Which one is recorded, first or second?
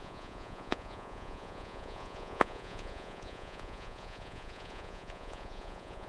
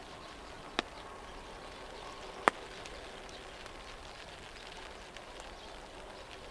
second